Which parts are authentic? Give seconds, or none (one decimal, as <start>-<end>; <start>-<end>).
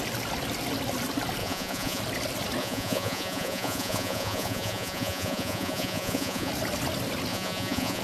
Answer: 0.0-1.4; 2.0-2.6; 6.5-7.3